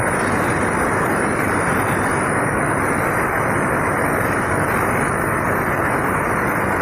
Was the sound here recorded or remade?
recorded